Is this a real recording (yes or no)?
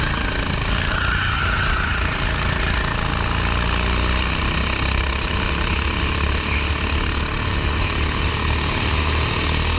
yes